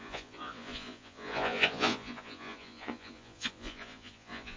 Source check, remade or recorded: remade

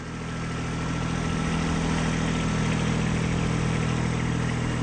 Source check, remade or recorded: recorded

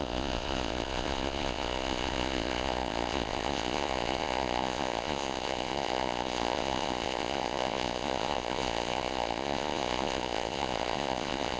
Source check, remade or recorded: remade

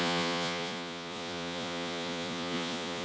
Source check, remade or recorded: remade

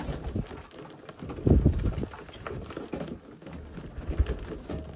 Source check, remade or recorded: recorded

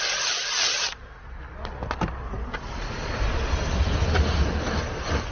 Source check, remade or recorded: recorded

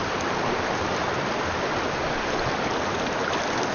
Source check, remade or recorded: recorded